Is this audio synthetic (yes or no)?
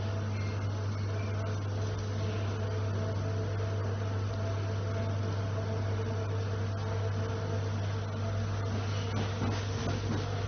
no